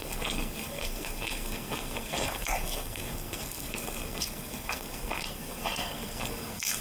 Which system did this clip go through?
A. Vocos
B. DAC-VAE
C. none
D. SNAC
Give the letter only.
D